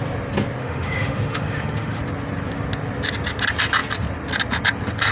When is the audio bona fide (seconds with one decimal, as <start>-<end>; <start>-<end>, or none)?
0.0-0.6; 2.0-5.1